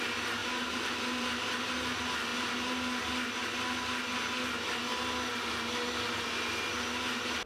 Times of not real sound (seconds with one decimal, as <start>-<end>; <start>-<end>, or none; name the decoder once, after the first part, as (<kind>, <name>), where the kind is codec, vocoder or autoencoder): 0.4-1.7 (vocoder, BigVGAN v2); 2.3-3.0